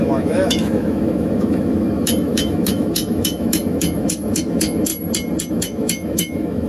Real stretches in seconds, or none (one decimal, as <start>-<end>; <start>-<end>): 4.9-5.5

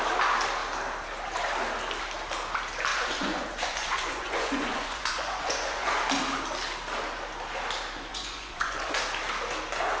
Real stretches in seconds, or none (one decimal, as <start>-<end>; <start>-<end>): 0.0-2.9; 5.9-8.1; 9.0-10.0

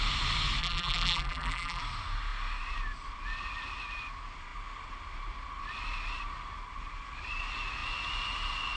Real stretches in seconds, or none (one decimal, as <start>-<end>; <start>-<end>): 0.0-0.6; 1.8-8.8

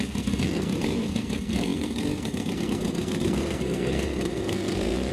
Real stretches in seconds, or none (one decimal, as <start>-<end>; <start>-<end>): none

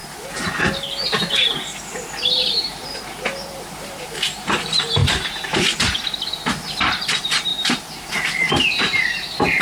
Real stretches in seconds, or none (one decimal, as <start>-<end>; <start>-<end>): 0.0-2.4; 5.0-6.8; 7.5-8.4

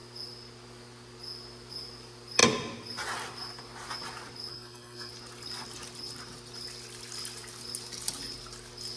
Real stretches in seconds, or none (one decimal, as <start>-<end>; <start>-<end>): 0.0-4.5; 5.1-9.0

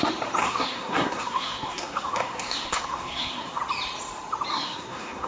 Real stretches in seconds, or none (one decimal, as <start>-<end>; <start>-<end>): 0.0-0.4; 3.6-4.5